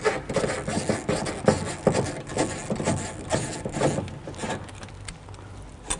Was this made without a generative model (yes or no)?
yes